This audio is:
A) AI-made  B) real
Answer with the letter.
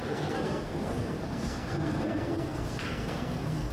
A